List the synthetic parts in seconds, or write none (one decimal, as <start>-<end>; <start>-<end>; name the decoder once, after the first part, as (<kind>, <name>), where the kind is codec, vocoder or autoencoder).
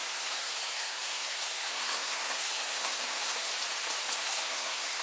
0.0-3.5 (codec, SNAC); 4.1-5.0